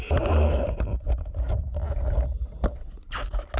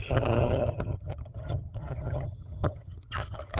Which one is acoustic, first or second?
first